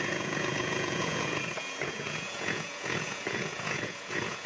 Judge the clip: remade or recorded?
remade